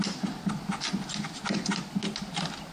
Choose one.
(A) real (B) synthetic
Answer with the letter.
A